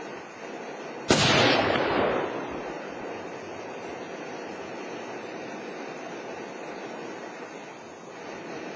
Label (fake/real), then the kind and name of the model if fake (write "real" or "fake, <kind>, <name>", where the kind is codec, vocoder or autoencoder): real